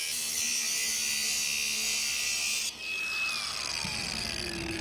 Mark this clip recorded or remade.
recorded